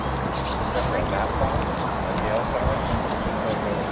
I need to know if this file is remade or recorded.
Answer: recorded